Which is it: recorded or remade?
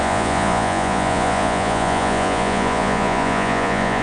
remade